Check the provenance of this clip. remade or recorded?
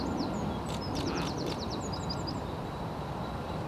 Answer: recorded